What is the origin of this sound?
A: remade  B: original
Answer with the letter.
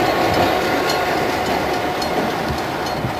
B